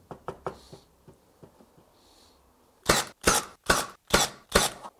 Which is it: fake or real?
real